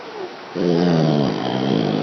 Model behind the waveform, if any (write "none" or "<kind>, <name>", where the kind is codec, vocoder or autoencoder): none